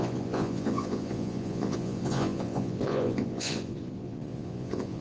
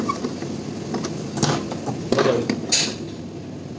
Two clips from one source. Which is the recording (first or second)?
second